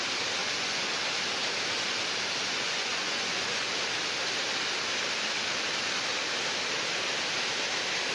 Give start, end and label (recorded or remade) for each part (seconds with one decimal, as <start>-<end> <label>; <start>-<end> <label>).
0.0-0.4 recorded; 0.4-0.9 remade; 0.9-2.4 recorded; 2.4-3.7 remade; 3.7-8.1 recorded